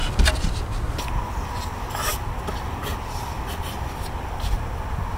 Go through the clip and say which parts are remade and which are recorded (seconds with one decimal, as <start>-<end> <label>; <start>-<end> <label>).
0.0-2.9 recorded; 2.9-3.6 remade; 3.6-5.2 recorded